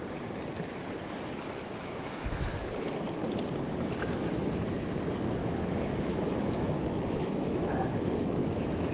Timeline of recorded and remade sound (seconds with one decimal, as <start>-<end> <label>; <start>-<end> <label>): 0.0-1.6 recorded; 1.6-2.6 remade; 2.6-5.4 recorded; 5.4-8.9 remade